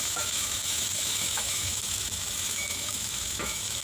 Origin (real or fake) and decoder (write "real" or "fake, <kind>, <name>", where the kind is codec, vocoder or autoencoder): fake, autoencoder, DAC-VAE